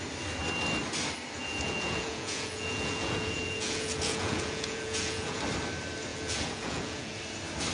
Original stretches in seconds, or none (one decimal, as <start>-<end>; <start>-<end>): 0.0-1.4; 5.4-6.1; 7.2-7.7